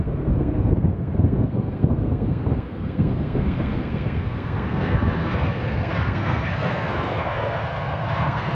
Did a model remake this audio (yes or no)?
yes